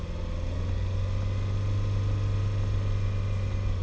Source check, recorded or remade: recorded